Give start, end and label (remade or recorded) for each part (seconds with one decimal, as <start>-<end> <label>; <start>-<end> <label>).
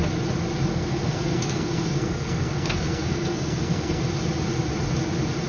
0.0-0.7 recorded; 0.7-4.0 remade; 4.0-5.5 recorded